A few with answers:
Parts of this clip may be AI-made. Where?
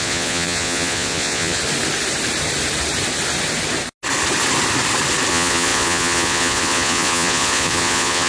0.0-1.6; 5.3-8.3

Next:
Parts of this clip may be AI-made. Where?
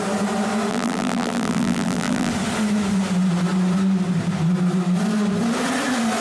0.7-2.3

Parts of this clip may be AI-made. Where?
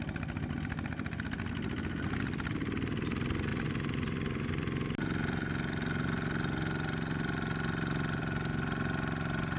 none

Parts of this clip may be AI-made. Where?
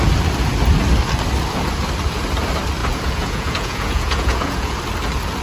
2.8-4.8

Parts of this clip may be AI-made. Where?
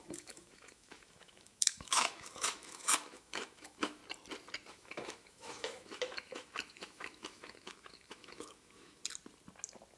0.0-4.0; 4.7-9.0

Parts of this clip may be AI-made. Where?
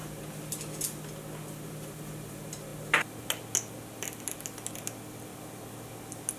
none